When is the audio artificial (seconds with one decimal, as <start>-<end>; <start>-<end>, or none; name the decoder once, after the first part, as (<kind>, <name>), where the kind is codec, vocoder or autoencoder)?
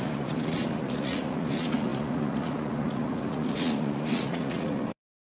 0.0-5.3 (vocoder, Vocos)